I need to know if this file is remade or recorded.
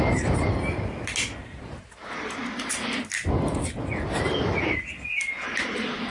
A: recorded